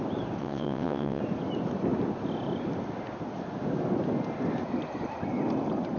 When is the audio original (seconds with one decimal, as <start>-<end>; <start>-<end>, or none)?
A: 0.0-0.4; 1.2-6.0